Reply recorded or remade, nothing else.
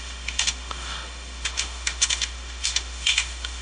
remade